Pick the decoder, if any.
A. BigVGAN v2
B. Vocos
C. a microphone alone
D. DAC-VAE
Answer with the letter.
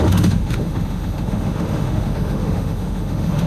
D